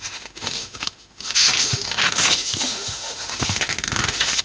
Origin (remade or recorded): remade